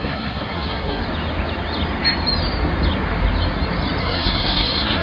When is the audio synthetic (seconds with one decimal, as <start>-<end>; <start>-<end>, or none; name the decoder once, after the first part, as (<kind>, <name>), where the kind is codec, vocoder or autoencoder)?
0.0-1.0 (codec, SNAC); 4.0-5.0